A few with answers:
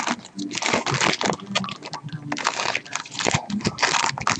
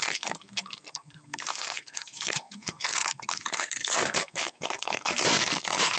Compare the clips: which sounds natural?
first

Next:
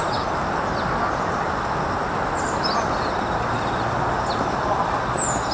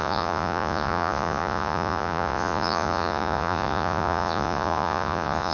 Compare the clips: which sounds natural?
first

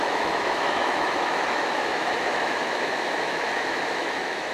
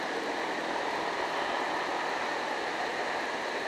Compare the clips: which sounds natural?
second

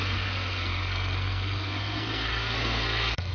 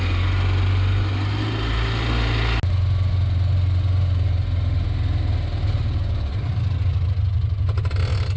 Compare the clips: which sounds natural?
second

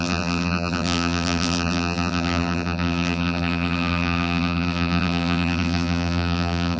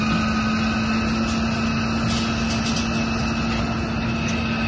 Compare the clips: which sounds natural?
second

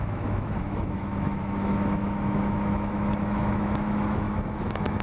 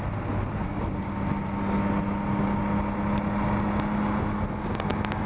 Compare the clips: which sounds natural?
second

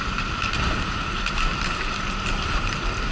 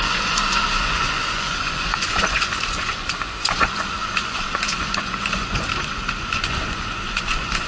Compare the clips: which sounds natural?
first